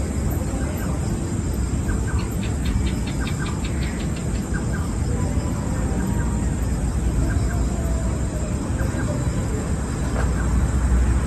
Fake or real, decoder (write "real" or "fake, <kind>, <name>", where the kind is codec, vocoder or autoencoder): real